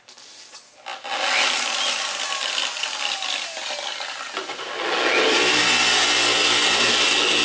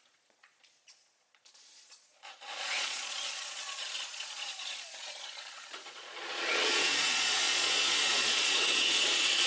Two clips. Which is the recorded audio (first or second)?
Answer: first